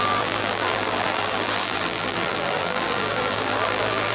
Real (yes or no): no